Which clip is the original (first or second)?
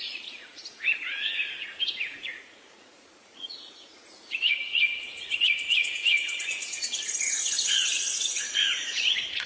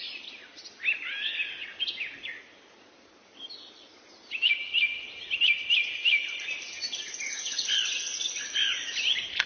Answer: second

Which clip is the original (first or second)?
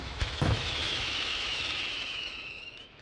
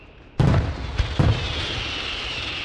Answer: second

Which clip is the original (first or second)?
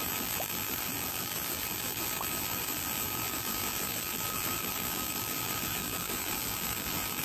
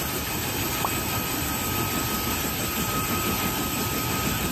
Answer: second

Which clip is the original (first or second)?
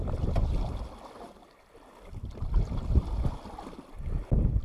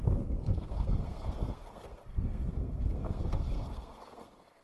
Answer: first